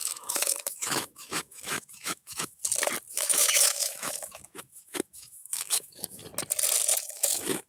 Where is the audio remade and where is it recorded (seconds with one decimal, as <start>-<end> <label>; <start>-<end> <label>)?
0.0-2.6 remade; 2.6-3.1 recorded; 3.1-6.2 remade; 6.2-7.0 recorded; 7.0-7.7 remade